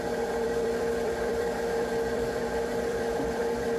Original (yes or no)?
no